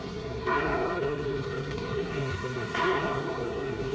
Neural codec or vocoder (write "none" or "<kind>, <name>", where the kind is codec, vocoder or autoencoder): codec, SNAC